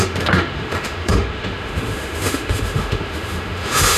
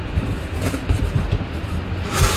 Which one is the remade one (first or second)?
first